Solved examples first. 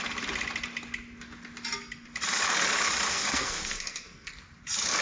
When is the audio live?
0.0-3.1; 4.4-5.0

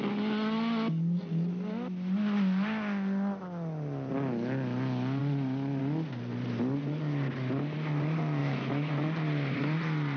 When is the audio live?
0.0-8.4; 8.9-10.2

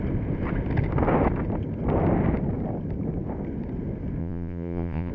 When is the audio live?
0.0-4.2

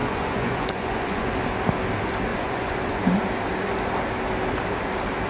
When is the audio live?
1.3-2.3; 3.0-5.3

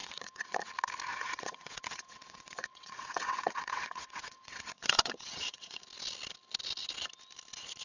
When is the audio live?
0.7-1.1; 5.8-7.8